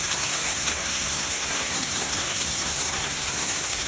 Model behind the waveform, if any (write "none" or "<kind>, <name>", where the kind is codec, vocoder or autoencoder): codec, SNAC